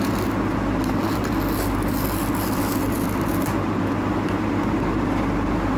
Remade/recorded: recorded